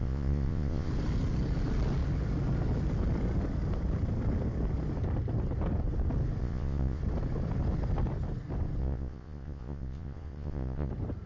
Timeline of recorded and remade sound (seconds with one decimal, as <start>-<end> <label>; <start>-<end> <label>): 0.0-0.9 remade; 0.9-6.4 recorded; 6.4-7.0 remade; 7.0-8.8 recorded; 8.8-10.9 remade; 10.9-11.3 recorded